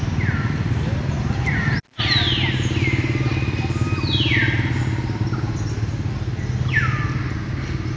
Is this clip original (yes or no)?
yes